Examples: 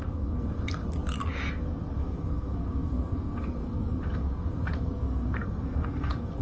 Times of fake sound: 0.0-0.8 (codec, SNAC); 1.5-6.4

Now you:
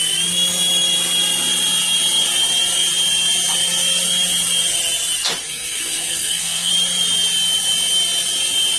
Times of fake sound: 5.4-6.7 (codec, SNAC)